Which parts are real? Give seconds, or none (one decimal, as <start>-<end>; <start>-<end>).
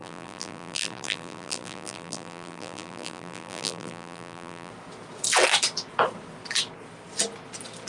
4.7-7.9